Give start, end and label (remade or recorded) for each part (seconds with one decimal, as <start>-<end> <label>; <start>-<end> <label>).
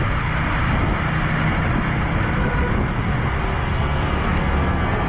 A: 0.0-3.6 recorded; 3.6-5.1 remade